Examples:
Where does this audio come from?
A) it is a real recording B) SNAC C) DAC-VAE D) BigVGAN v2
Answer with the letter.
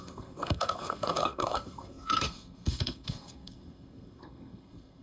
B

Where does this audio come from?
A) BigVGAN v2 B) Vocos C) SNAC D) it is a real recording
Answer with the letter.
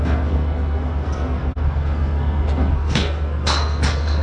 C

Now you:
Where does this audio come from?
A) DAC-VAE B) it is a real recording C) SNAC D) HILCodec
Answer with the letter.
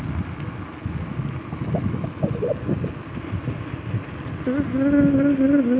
B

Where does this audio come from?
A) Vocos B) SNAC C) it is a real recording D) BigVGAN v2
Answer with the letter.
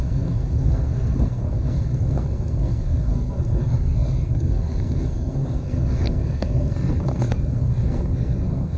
B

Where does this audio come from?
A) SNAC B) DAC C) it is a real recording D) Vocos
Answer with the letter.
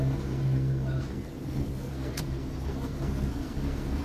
A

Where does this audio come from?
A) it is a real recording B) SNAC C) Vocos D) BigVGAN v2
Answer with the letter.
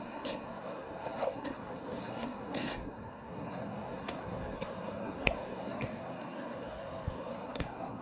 B